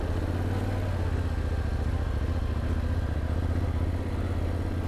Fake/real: real